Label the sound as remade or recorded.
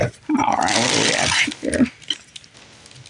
recorded